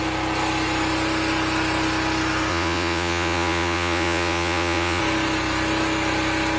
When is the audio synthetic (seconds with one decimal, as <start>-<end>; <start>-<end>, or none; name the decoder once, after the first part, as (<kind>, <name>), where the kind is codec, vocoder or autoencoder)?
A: 2.5-5.0 (vocoder, Vocos)